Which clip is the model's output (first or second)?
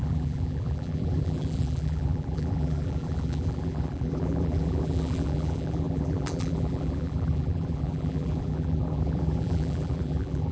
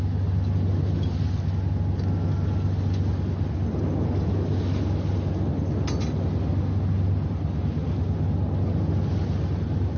first